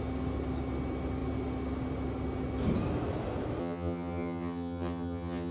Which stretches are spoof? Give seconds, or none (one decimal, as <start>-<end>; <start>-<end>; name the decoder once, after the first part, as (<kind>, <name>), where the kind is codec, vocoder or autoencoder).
3.6-5.5 (vocoder, HiFi-GAN)